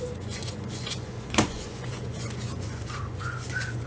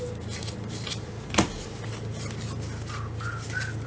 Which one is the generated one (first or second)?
first